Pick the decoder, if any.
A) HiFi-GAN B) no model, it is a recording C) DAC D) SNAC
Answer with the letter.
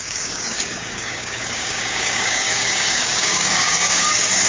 C